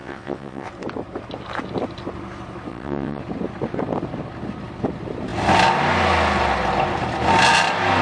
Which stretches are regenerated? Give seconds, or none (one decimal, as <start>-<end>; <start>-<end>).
0.0-0.7; 2.7-3.2